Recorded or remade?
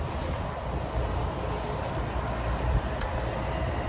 recorded